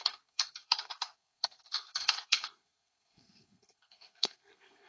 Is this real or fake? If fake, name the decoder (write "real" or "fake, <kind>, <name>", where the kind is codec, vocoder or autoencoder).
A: fake, codec, SNAC